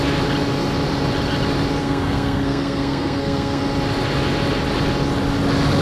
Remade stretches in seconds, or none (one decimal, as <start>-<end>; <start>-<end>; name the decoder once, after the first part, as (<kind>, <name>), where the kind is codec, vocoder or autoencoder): 1.8-3.6 (codec, SNAC)